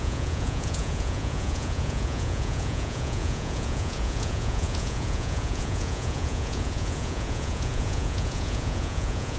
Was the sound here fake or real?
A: fake